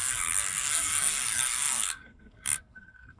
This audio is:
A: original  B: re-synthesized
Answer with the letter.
B